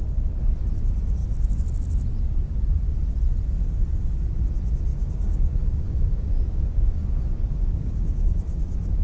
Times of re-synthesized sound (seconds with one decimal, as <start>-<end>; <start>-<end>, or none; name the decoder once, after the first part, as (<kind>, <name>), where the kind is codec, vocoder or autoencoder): 4.9-9.0 (codec, DAC)